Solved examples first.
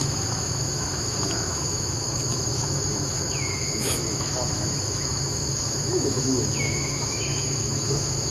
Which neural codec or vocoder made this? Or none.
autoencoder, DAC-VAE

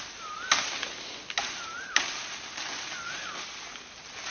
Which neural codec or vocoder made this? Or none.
none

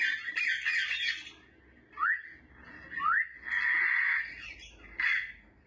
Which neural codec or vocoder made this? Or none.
none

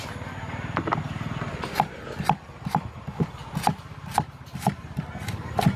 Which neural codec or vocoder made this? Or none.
none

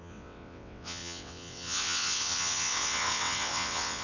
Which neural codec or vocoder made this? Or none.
vocoder, WaveNeXt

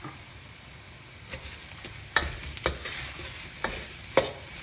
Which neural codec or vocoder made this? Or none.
none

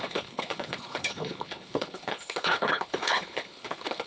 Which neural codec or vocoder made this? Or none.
codec, HILCodec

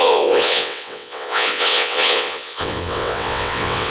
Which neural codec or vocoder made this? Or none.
vocoder, WaveNeXt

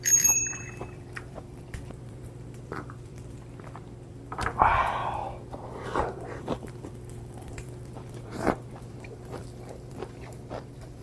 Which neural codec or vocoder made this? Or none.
vocoder, BigVGAN v2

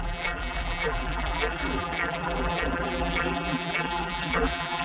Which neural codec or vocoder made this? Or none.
vocoder, BigVGAN v2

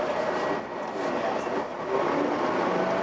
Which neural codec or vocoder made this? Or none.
none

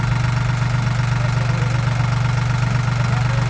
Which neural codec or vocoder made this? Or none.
none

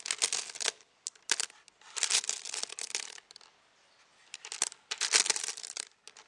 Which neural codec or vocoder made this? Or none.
none